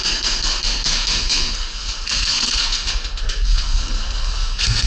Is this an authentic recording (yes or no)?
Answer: no